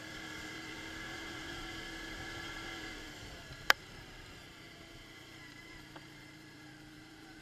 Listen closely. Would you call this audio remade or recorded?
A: remade